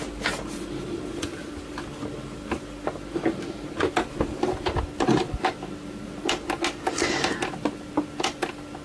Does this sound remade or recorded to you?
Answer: recorded